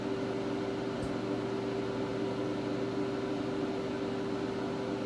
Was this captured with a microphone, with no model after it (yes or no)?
yes